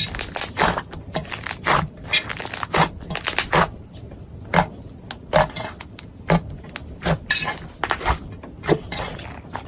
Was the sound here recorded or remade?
recorded